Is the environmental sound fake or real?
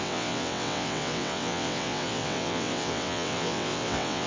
fake